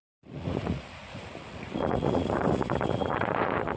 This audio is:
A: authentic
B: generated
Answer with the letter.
B